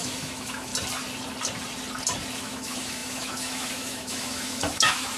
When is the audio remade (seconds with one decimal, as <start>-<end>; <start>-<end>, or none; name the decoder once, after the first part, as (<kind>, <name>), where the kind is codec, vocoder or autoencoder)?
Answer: 0.0-0.7 (autoencoder, DAC-VAE); 2.4-5.2